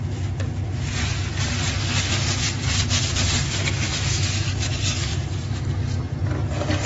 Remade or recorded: recorded